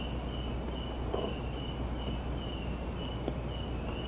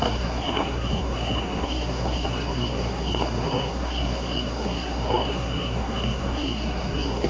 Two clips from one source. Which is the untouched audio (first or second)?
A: first